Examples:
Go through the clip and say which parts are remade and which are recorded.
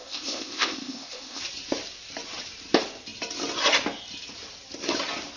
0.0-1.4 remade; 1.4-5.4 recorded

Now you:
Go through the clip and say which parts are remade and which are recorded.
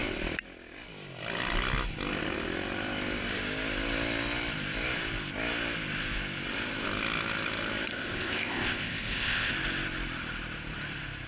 0.0-7.9 recorded; 7.9-9.5 remade; 9.5-11.3 recorded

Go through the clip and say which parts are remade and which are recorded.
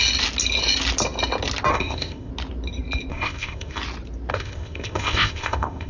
0.0-1.7 recorded; 1.7-2.3 remade; 2.3-3.1 recorded; 3.1-3.8 remade; 3.8-4.3 recorded; 4.3-5.9 remade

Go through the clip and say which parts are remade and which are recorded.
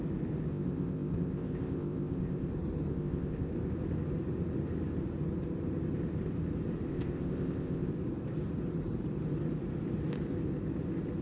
0.0-0.5 recorded; 0.5-2.5 remade; 2.5-2.9 recorded; 2.9-3.5 remade; 3.5-6.9 recorded; 6.9-7.9 remade; 7.9-11.2 recorded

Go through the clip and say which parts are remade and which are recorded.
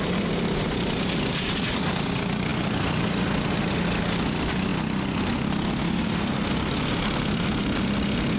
0.0-8.4 recorded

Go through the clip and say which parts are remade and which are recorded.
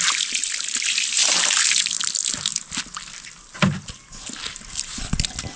0.0-5.6 recorded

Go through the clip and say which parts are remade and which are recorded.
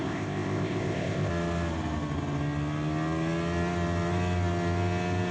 0.0-1.3 remade; 1.3-5.3 recorded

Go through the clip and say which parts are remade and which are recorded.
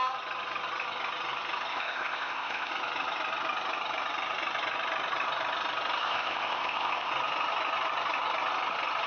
0.0-1.7 recorded; 1.7-2.7 remade; 2.7-6.0 recorded; 6.0-7.1 remade; 7.1-9.1 recorded